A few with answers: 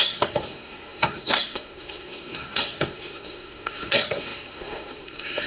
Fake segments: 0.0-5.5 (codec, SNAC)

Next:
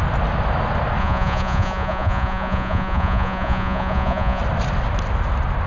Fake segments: 1.0-4.4 (vocoder, Vocos)

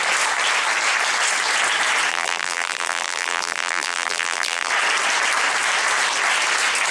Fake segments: 2.1-4.7 (vocoder, BigVGAN v2)

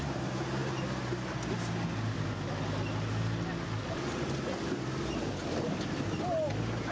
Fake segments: none

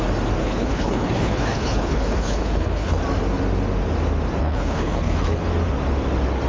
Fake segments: 0.4-3.0 (codec, HILCodec); 4.4-5.4

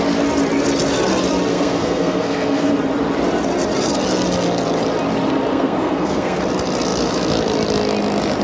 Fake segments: 1.5-2.7 (codec, SNAC); 5.5-6.4

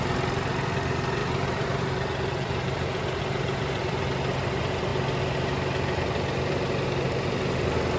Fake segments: 1.2-4.0 (vocoder, BigVGAN v2)

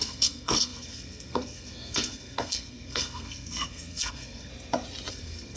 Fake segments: 0.0-4.5 (codec, SNAC); 5.1-5.6